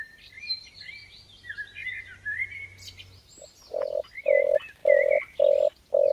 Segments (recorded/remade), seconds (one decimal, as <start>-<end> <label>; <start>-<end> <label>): 0.0-1.0 remade; 1.0-3.3 recorded; 3.3-4.8 remade; 4.8-5.4 recorded; 5.4-6.1 remade